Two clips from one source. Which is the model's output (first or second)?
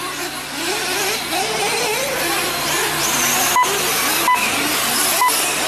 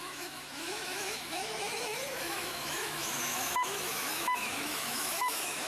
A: second